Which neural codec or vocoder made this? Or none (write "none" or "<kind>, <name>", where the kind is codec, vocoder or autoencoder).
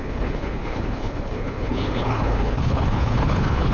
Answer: codec, HILCodec